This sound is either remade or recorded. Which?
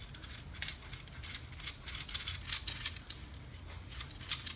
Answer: recorded